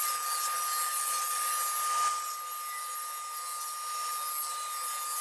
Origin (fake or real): real